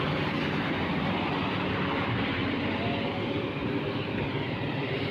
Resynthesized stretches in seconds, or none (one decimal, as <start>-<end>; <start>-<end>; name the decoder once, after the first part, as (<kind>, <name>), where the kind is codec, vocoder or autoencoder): 4.3-5.1 (vocoder, BigVGAN v2)